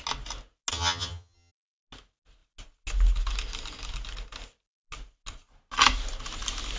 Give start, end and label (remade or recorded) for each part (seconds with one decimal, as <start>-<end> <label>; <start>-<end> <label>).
0.0-0.7 recorded; 0.7-1.5 remade; 1.5-6.8 recorded